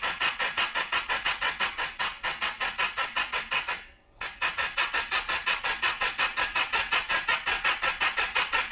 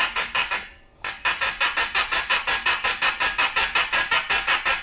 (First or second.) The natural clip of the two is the second